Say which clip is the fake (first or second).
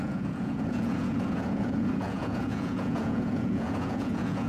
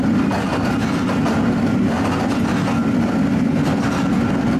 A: first